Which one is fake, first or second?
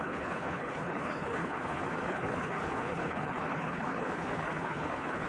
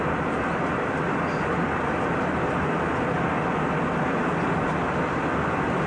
first